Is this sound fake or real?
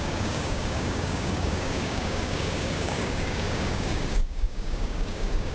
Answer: fake